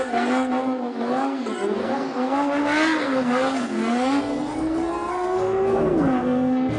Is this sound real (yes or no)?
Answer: no